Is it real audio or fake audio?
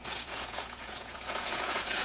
fake